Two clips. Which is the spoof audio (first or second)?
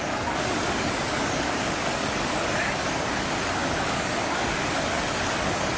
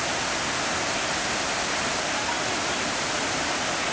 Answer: first